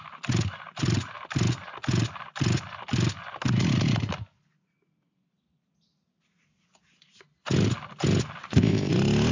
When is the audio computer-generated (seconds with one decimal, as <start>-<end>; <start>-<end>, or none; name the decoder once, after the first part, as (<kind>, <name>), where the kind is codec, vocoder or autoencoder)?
8.4-8.9 (codec, ZipCodec)